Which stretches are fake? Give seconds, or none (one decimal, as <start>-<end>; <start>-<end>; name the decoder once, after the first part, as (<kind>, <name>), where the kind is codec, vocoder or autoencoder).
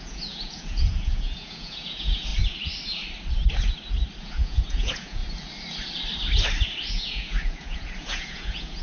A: 0.0-2.3 (vocoder, Vocos); 4.2-5.2; 6.9-8.8